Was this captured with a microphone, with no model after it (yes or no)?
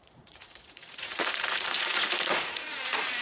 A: no